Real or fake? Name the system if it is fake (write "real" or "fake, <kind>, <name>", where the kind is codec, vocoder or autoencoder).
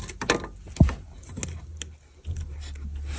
real